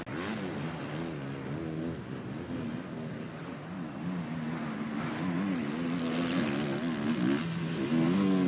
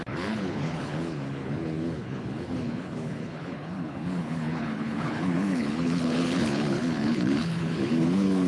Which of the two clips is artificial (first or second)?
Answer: second